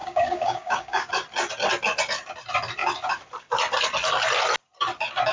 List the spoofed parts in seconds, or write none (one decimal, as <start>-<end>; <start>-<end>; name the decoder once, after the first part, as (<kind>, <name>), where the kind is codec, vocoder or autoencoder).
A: 0.0-1.1 (codec, DAC)